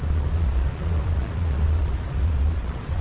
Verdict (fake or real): fake